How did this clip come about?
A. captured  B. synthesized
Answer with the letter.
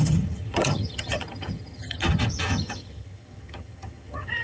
B